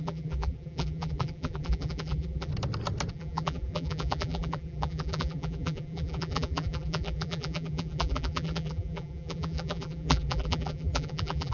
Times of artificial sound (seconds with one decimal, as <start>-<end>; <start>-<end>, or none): 0.0-2.5; 3.1-11.5